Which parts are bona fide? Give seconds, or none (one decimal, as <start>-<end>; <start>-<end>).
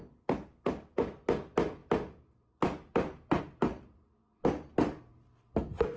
0.0-6.0